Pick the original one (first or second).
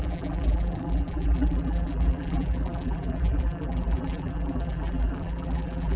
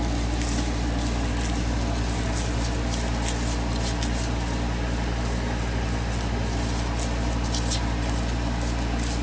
second